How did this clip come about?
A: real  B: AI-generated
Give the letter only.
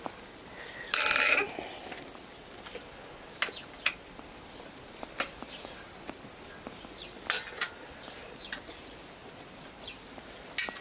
B